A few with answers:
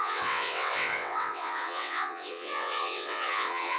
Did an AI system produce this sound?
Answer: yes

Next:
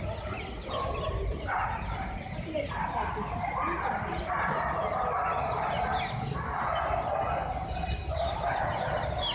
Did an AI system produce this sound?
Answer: no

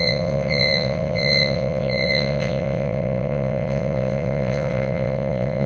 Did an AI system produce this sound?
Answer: yes